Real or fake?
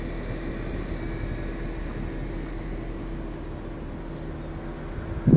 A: real